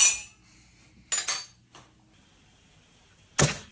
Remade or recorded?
recorded